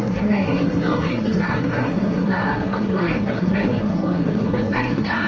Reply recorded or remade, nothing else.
remade